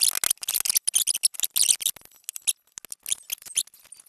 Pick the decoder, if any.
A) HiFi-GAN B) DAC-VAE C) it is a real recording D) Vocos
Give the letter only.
C